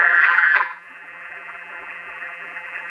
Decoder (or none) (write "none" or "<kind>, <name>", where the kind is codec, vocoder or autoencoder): vocoder, BigVGAN v2